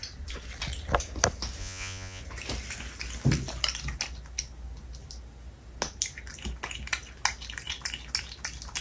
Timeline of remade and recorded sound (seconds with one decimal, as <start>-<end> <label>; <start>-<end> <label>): 0.0-1.6 recorded; 1.6-2.2 remade; 2.2-8.8 recorded